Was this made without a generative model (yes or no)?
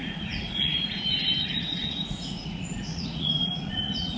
no